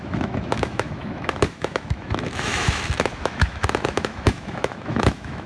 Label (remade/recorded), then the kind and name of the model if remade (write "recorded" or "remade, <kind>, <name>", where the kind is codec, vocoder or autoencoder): remade, autoencoder, DAC-VAE